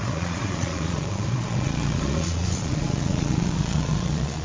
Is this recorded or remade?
remade